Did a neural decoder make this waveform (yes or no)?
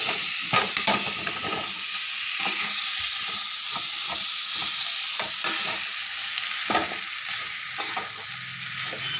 no